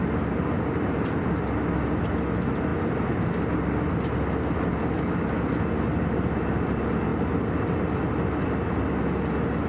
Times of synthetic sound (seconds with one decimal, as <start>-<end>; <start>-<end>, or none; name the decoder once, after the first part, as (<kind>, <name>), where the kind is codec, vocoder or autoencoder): none